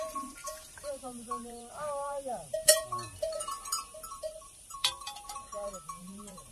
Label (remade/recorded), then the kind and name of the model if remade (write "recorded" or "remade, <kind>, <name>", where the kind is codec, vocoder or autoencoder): remade, vocoder, BigVGAN v2